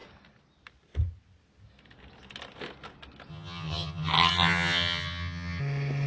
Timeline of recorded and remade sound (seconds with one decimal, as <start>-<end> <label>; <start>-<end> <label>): 0.0-3.3 recorded; 3.3-5.6 remade; 5.6-6.1 recorded